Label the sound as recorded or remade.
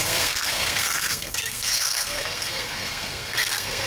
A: remade